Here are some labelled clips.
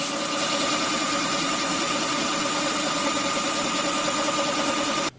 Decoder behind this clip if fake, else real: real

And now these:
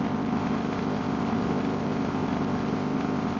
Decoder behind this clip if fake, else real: fake, codec, ZipCodec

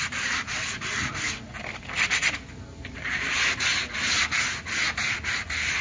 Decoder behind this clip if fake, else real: real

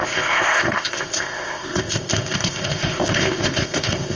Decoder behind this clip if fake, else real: fake, codec, ZipCodec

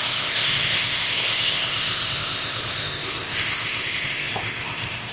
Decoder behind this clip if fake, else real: fake, codec, ZipCodec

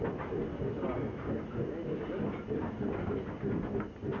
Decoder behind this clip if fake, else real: real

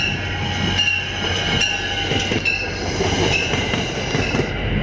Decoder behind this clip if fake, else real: real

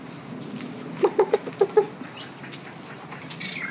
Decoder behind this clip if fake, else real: real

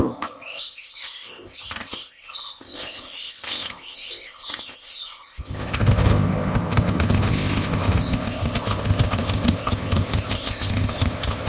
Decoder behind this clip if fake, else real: fake, codec, ZipCodec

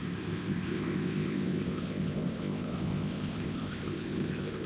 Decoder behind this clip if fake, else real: fake, codec, ZipCodec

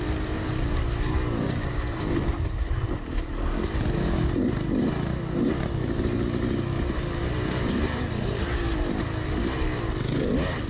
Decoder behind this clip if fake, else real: real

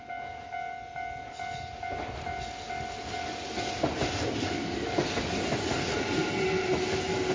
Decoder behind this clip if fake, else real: real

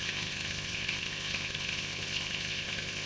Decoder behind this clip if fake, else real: fake, codec, ZipCodec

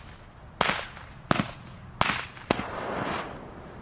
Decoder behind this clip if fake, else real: real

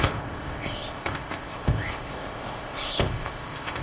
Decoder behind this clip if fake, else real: fake, codec, ZipCodec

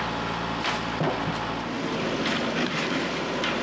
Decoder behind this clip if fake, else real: real